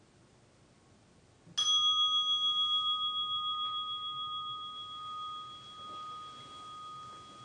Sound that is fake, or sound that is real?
real